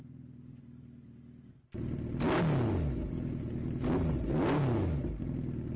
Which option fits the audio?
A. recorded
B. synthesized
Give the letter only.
A